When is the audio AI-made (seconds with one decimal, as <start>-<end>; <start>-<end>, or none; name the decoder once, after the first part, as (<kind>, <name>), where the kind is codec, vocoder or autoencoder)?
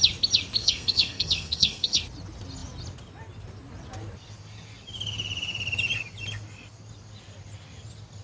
0.6-2.0 (codec, SNAC)